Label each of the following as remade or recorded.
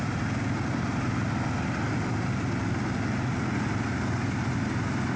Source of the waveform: recorded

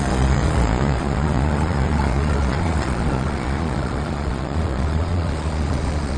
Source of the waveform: remade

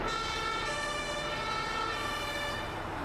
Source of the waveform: recorded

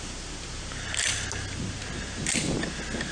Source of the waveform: recorded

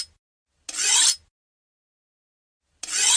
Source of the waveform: recorded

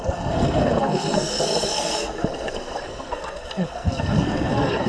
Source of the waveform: remade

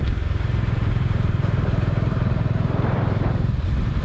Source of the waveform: remade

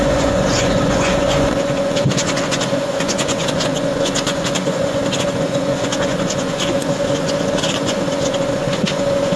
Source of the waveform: remade